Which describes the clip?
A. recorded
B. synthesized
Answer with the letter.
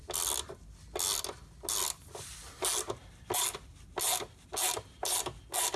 A